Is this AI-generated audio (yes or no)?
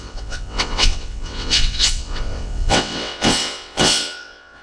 yes